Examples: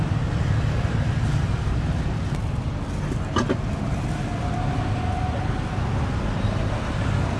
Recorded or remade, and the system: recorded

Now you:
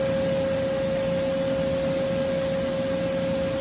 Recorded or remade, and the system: recorded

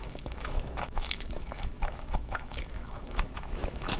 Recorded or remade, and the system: remade, autoencoder, DAC-VAE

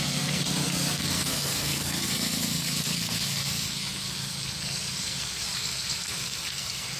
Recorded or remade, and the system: remade, codec, SNAC